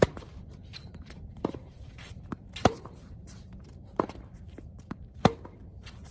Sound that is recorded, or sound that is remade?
remade